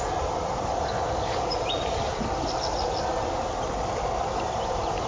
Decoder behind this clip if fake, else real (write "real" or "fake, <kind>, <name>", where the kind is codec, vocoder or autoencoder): real